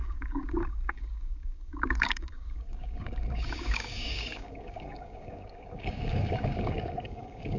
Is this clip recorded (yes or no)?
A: no